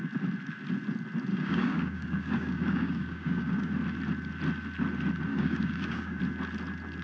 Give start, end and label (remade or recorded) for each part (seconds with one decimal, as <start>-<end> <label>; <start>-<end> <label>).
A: 0.0-1.3 recorded; 1.3-3.7 remade; 3.7-5.3 recorded; 5.3-6.2 remade; 6.2-7.0 recorded